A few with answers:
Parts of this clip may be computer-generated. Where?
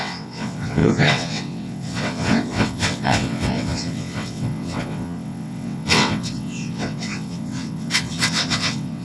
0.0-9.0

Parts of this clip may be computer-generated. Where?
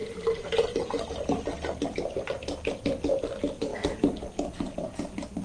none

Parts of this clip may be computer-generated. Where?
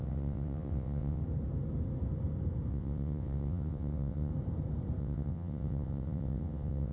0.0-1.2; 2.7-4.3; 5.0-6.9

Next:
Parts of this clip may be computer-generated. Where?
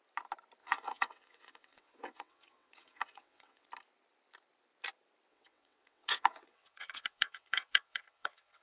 0.6-3.7; 5.3-8.6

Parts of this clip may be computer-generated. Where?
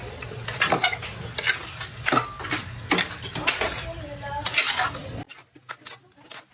none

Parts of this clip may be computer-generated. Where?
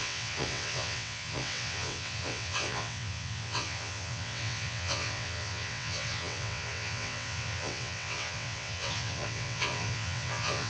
0.0-10.7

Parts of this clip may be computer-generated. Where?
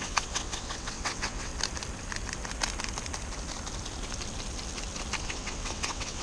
0.0-1.5; 5.2-6.2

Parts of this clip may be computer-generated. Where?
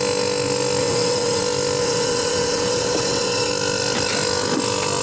0.8-1.4; 1.8-3.5